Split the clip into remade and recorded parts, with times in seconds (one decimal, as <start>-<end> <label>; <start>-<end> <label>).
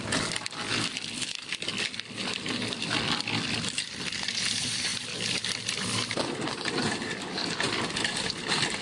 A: 0.0-8.8 recorded